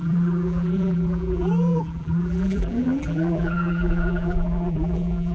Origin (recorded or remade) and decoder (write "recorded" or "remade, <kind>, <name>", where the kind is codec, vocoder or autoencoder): remade, vocoder, BigVGAN v2